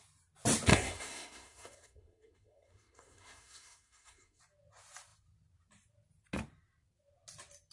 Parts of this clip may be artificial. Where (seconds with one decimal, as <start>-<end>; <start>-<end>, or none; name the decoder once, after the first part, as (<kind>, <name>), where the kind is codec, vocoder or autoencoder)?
0.7-4.4 (codec, SNAC)